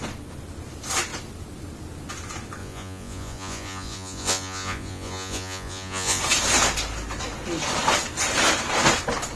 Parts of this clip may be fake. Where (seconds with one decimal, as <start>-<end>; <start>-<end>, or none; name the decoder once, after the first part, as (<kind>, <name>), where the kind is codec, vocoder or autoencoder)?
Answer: 2.6-6.2 (vocoder, Vocos)